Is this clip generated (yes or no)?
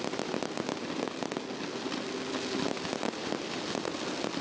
no